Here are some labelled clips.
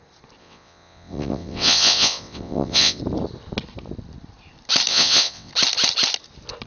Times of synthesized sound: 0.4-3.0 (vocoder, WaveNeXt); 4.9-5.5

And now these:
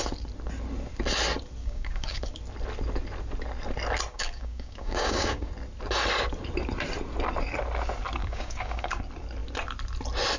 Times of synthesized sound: 1.6-2.2 (codec, DAC); 4.1-5.5; 8.2-9.0

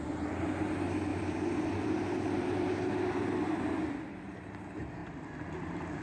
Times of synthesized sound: 1.1-3.0 (vocoder, BigVGAN v2); 5.0-6.0

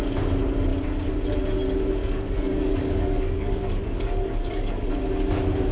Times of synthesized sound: 2.0-4.9 (codec, DAC)

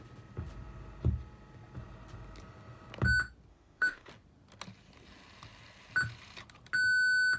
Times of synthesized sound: 3.5-4.1 (autoencoder, DAC-VAE)

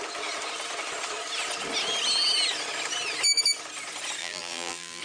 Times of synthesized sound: 4.2-5.0 (vocoder, BigVGAN v2)

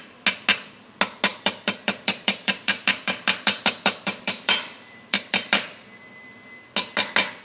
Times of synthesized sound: 1.3-5.7 (vocoder, BigVGAN v2)